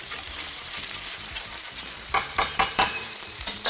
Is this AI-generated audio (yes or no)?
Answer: yes